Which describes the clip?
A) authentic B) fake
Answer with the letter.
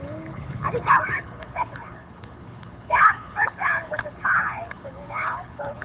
B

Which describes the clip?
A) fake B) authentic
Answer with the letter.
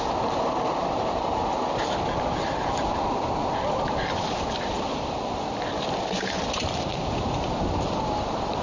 B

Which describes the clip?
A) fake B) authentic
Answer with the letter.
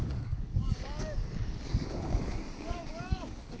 A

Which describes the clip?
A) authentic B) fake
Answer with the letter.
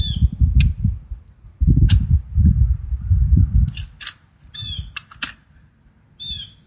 A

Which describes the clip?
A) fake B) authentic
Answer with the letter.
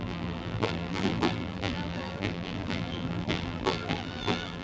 A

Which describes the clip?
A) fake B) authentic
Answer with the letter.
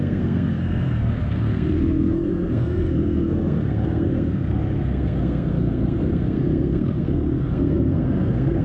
A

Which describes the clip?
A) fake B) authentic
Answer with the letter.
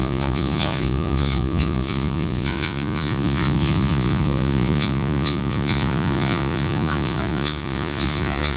A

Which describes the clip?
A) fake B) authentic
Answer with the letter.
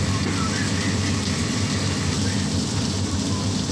B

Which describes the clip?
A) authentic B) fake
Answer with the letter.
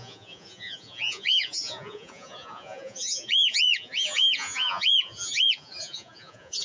B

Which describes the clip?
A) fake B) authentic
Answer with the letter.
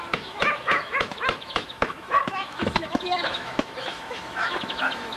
A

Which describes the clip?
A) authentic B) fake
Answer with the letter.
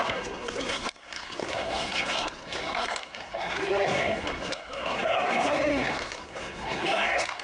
B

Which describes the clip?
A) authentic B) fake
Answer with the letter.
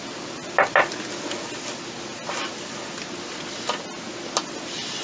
A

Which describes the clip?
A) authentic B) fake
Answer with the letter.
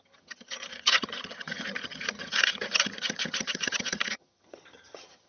B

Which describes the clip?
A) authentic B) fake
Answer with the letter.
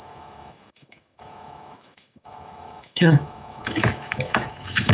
B